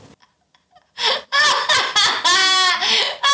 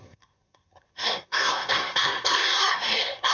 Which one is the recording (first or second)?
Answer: first